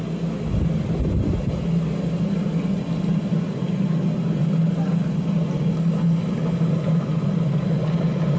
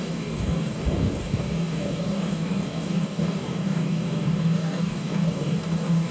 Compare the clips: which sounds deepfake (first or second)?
second